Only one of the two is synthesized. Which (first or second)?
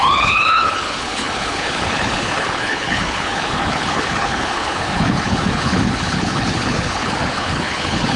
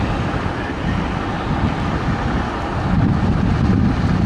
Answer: first